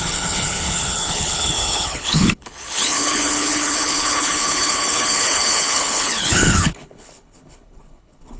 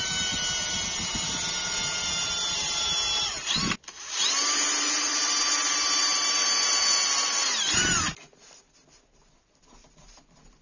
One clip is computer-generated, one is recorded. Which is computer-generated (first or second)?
first